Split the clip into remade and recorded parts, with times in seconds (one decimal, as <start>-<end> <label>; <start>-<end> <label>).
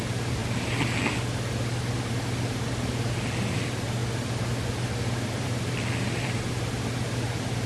0.0-0.4 remade; 0.4-1.5 recorded; 1.5-4.0 remade; 4.0-4.7 recorded; 4.7-7.7 remade